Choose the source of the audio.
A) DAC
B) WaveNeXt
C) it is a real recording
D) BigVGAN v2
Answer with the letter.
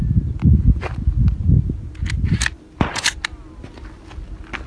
C